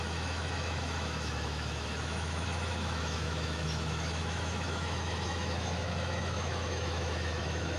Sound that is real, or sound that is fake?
fake